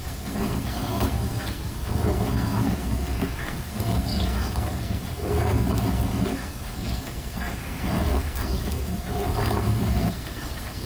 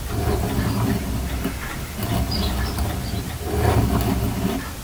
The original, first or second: second